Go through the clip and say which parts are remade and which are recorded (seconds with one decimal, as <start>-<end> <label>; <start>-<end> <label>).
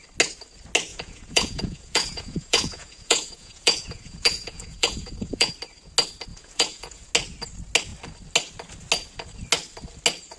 0.0-0.9 recorded; 0.9-5.5 remade; 5.5-6.3 recorded; 6.3-7.1 remade; 7.1-10.4 recorded